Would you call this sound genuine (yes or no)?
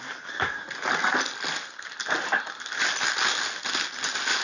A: yes